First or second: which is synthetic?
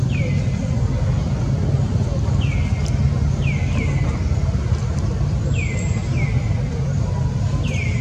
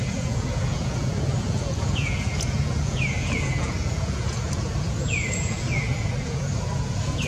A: second